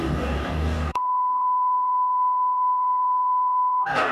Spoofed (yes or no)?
yes